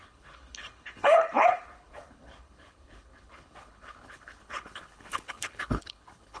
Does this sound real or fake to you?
fake